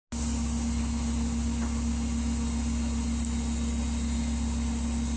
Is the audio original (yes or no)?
yes